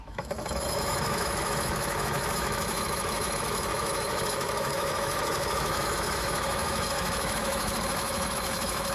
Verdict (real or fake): fake